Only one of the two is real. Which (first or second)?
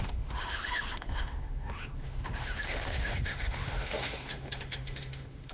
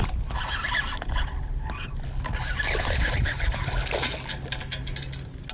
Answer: second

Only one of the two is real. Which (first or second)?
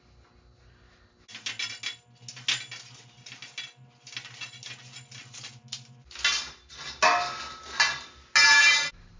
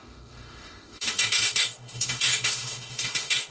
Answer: first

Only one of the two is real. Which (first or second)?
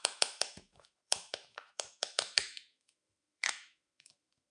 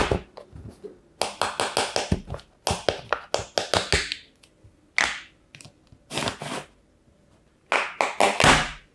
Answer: second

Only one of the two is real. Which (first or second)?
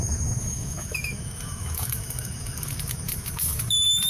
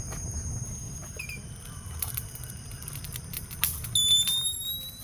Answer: second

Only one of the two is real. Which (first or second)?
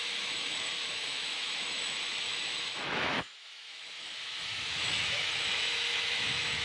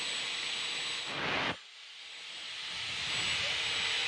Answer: second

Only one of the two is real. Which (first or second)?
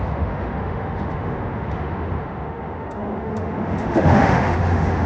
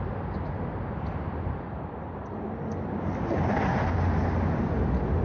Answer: second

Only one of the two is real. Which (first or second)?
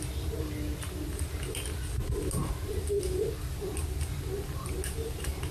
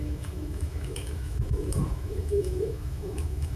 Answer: first